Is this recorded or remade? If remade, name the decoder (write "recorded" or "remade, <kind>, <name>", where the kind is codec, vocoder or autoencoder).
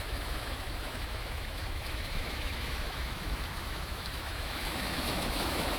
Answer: remade, autoencoder, DAC-VAE